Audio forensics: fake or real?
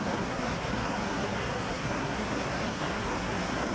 fake